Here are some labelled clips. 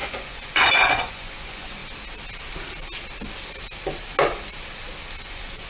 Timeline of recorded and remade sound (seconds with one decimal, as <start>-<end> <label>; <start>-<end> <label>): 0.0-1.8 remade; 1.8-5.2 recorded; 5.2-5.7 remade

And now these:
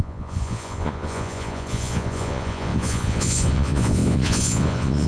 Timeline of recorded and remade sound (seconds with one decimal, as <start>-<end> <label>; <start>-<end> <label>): 0.0-5.1 remade

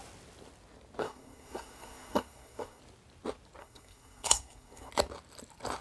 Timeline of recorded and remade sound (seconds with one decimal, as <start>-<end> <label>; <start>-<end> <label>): 0.0-1.0 recorded; 1.0-2.8 remade; 2.8-3.6 recorded; 3.6-4.9 remade; 4.9-5.8 recorded

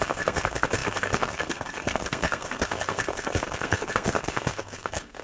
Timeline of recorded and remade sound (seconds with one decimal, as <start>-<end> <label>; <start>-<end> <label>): 0.0-5.2 remade

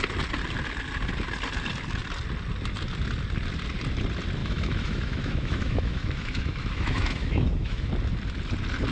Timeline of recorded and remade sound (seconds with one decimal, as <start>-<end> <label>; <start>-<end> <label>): 0.0-4.4 recorded; 4.4-7.9 remade; 7.9-8.9 recorded

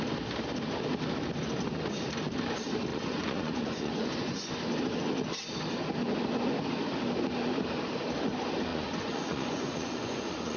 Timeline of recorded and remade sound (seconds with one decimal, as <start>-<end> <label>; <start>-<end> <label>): 0.0-2.9 recorded; 2.9-4.5 remade; 4.5-8.7 recorded; 8.7-10.6 remade